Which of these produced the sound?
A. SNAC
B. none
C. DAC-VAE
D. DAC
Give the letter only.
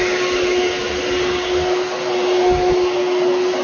B